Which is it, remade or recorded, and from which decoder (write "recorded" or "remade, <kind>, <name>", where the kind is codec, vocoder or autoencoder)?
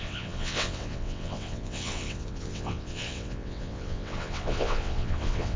remade, vocoder, WaveNeXt